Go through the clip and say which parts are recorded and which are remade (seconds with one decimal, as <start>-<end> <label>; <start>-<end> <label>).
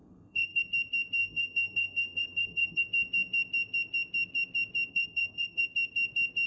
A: 0.0-0.6 remade; 0.6-1.2 recorded; 1.2-2.8 remade; 2.8-4.9 recorded; 4.9-5.6 remade; 5.6-6.5 recorded